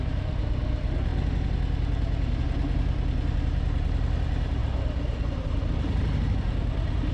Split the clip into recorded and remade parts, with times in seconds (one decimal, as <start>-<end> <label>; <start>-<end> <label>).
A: 0.0-1.1 remade; 1.1-2.4 recorded; 2.4-7.1 remade